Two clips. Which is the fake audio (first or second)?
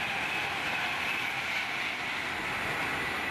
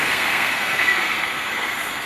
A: second